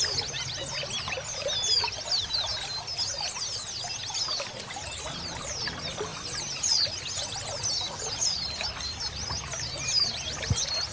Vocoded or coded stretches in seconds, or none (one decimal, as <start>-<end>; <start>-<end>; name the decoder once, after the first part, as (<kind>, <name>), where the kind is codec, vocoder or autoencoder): none